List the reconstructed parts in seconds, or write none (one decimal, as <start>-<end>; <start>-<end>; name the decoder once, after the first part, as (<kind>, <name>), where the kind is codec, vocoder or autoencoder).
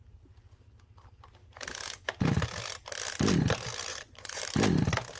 3.9-4.4 (vocoder, Vocos)